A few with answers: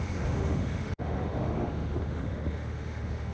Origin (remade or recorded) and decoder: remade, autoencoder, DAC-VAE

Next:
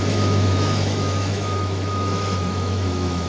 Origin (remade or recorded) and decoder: remade, autoencoder, DAC-VAE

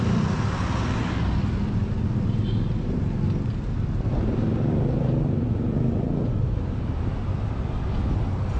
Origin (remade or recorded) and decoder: recorded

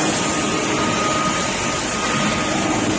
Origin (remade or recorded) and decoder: recorded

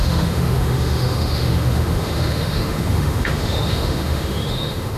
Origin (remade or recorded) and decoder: remade, autoencoder, DAC-VAE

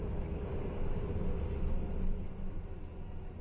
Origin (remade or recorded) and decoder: recorded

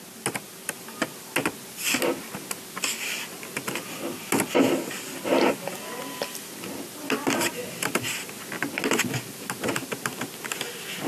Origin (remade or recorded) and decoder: recorded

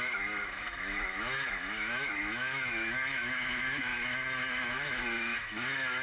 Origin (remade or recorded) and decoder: remade, autoencoder, DAC-VAE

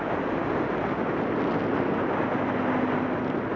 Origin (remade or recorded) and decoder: recorded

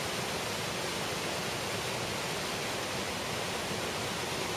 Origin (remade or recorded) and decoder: recorded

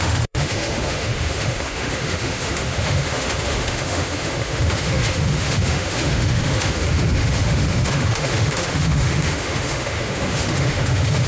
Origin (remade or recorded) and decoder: remade, autoencoder, DAC-VAE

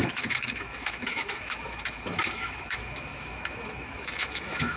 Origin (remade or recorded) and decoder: remade, autoencoder, DAC-VAE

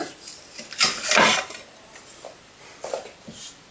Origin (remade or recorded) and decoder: recorded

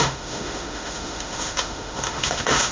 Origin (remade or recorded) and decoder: remade, autoencoder, DAC-VAE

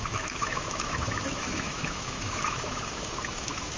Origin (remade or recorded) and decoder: remade, autoencoder, DAC-VAE